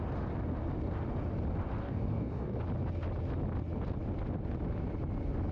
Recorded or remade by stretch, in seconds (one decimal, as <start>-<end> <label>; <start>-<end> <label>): 0.0-1.8 recorded; 1.8-2.6 remade; 2.6-5.5 recorded